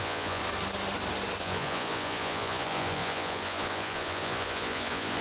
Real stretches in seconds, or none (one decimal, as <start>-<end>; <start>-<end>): 0.4-1.4